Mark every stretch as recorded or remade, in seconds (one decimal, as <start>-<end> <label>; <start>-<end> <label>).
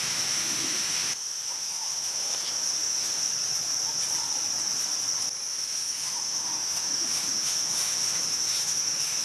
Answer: 0.0-3.3 remade; 3.3-5.5 recorded; 5.5-9.2 remade